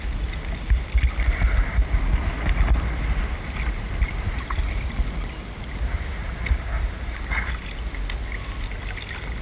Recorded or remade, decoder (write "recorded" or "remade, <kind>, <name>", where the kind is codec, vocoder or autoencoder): recorded